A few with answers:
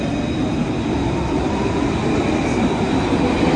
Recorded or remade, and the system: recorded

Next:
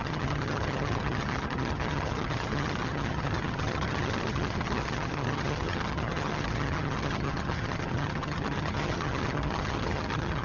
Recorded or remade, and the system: remade, vocoder, HiFi-GAN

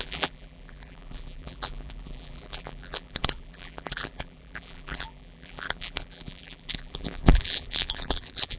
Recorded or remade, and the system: remade, vocoder, BigVGAN v2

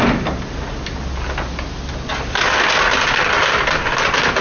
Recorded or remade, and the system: recorded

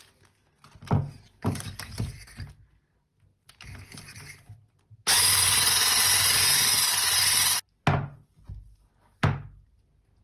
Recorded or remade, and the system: recorded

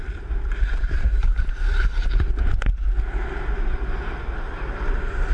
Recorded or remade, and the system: recorded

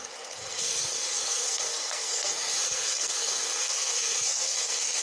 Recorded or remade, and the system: remade, codec, SNAC